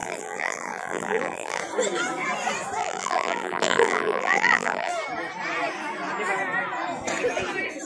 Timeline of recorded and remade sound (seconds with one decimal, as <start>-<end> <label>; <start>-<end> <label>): 0.0-1.6 remade; 1.6-2.8 recorded; 2.8-4.9 remade; 4.9-7.8 recorded